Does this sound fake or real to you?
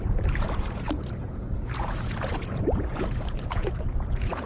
fake